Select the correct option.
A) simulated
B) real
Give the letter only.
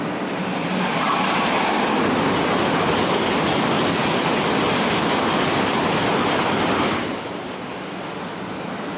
B